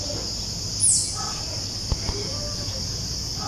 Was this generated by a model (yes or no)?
no